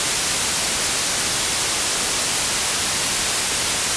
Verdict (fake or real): real